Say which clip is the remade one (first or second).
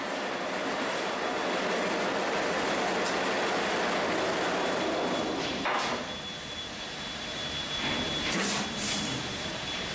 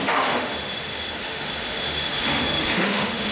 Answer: second